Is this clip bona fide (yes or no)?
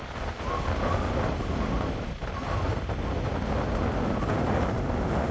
yes